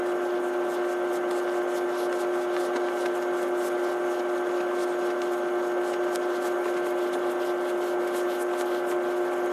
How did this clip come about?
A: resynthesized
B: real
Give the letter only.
B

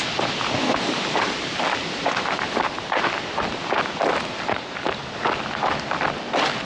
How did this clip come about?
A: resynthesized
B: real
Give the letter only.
B